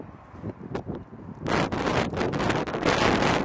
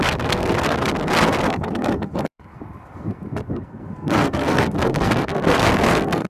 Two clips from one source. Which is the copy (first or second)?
second